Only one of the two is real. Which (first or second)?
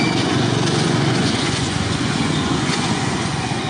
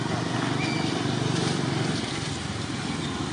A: second